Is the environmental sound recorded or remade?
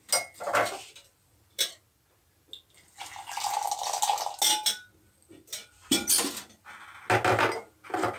recorded